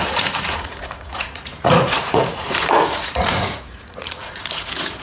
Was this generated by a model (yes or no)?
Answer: yes